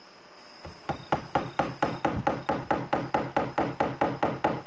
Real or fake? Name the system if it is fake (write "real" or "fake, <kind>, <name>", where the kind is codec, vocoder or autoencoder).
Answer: real